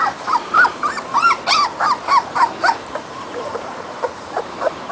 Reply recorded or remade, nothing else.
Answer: remade